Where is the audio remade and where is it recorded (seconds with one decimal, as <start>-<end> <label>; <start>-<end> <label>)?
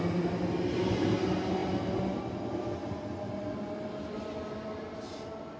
0.0-5.6 recorded